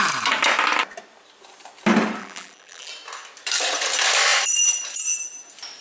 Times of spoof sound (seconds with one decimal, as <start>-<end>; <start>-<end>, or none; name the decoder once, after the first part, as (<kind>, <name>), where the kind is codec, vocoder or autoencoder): 2.2-2.9 (vocoder, BigVGAN v2)